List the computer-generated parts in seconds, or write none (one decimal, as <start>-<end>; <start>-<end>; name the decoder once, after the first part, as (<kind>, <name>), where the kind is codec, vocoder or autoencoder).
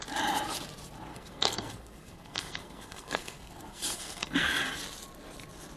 1.1-4.6 (codec, SNAC)